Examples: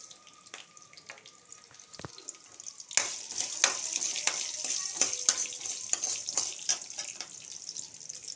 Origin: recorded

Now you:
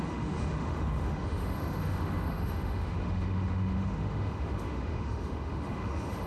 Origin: remade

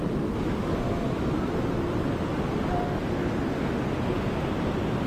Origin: recorded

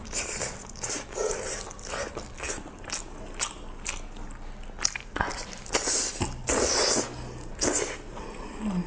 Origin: recorded